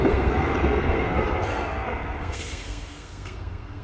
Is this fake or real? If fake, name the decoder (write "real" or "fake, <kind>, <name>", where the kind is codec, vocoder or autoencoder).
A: fake, codec, SNAC